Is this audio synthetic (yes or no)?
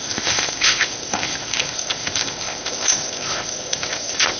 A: yes